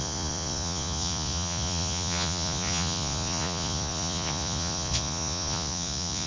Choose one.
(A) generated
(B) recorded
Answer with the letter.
A